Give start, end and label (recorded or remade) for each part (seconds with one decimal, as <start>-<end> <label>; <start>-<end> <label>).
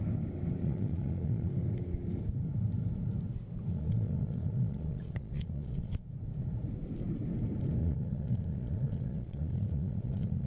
0.0-0.6 recorded; 0.6-1.5 remade; 1.5-3.7 recorded; 3.7-5.9 remade; 5.9-7.8 recorded; 7.8-10.5 remade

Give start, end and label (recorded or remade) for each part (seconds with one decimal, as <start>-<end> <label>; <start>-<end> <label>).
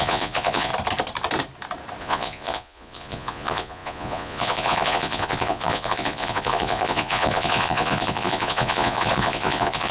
0.0-0.7 remade; 0.7-2.0 recorded; 2.0-9.9 remade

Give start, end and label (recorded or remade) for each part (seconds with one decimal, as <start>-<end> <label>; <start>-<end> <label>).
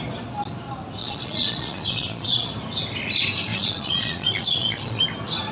0.0-1.0 recorded; 1.0-2.5 remade; 2.5-3.5 recorded; 3.5-5.0 remade; 5.0-5.5 recorded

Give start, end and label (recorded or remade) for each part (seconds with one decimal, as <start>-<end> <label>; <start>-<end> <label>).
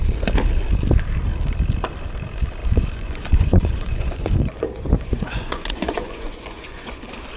0.0-2.6 recorded; 2.6-7.0 remade; 7.0-7.4 recorded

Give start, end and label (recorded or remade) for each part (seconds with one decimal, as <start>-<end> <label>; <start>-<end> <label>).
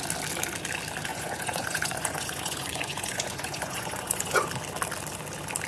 0.0-1.1 recorded; 1.1-4.5 remade; 4.5-5.7 recorded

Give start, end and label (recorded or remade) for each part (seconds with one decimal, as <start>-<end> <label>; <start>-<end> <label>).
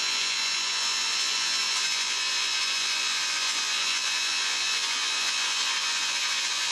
0.0-6.7 remade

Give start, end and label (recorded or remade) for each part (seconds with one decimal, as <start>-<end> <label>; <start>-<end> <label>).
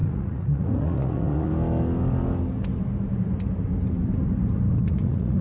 0.0-1.5 remade; 1.5-4.7 recorded; 4.7-5.4 remade